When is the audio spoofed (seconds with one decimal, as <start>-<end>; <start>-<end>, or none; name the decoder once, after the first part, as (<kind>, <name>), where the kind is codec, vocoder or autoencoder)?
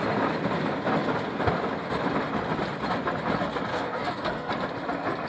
3.7-4.5 (codec, SNAC)